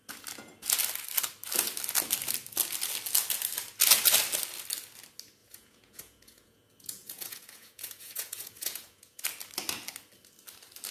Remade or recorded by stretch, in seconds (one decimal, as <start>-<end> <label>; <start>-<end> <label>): 0.0-5.4 recorded; 5.4-9.2 remade; 9.2-10.9 recorded